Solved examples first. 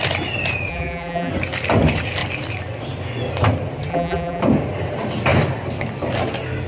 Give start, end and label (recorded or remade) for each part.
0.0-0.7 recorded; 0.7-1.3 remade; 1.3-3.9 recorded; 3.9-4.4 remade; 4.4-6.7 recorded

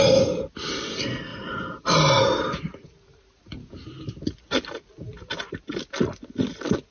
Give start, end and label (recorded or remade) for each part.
0.0-1.3 recorded; 1.3-3.7 remade; 3.7-6.9 recorded

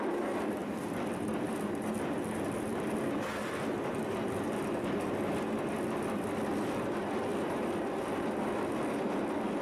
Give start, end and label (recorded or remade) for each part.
0.0-9.6 recorded

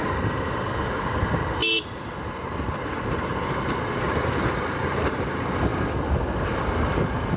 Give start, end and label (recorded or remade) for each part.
0.0-7.4 recorded

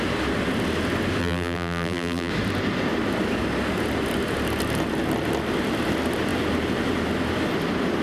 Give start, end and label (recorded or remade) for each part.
0.0-1.2 recorded; 1.2-2.3 remade; 2.3-8.0 recorded

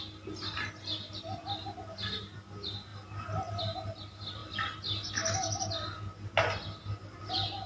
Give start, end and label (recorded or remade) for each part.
0.0-7.7 recorded

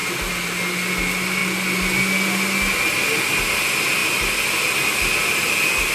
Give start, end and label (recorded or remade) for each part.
0.0-5.9 recorded